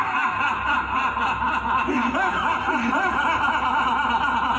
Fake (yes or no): no